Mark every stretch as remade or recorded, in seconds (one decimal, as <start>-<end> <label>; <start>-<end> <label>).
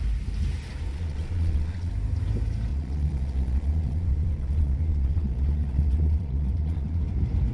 0.0-0.9 recorded; 0.9-1.9 remade; 1.9-2.7 recorded; 2.7-7.0 remade; 7.0-7.5 recorded